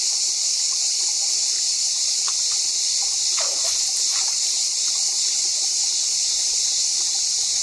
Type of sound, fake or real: fake